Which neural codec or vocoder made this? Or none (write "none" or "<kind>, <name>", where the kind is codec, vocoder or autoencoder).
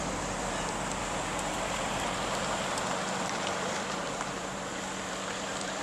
vocoder, BigVGAN v2